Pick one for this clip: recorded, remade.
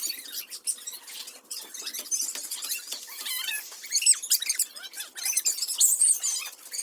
recorded